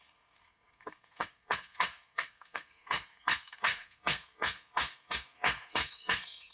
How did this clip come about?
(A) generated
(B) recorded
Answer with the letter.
A